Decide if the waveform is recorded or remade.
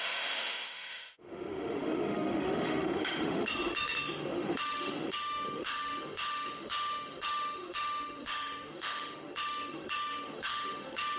remade